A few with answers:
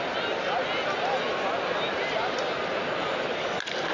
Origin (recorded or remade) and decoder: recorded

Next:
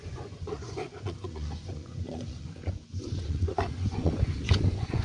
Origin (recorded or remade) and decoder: remade, vocoder, Vocos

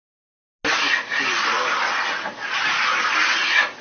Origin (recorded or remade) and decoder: recorded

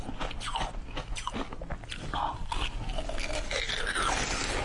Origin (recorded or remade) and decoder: recorded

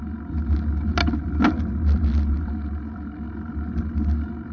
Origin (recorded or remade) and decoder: recorded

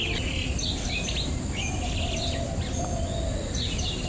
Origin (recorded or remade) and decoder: recorded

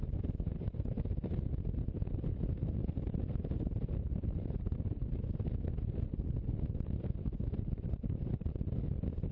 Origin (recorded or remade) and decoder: recorded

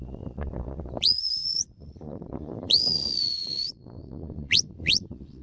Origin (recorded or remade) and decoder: remade, vocoder, Vocos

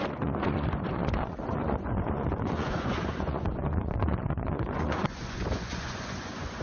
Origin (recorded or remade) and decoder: remade, vocoder, Vocos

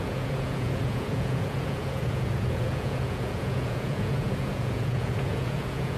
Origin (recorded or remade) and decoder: remade, vocoder, Vocos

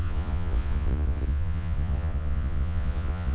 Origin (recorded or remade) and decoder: remade, vocoder, Vocos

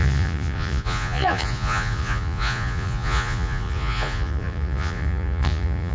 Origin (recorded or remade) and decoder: remade, vocoder, Vocos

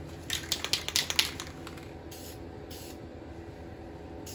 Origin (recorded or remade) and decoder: recorded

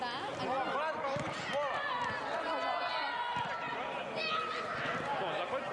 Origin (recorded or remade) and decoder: recorded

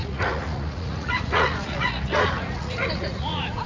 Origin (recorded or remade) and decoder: remade, vocoder, Vocos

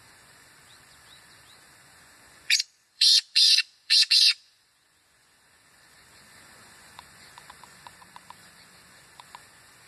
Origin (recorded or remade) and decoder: remade, vocoder, Vocos